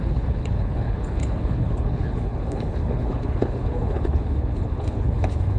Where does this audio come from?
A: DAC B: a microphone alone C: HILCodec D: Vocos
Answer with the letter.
C